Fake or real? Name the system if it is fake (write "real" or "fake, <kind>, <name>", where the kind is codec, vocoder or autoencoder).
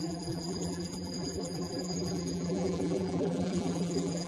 fake, vocoder, BigVGAN v2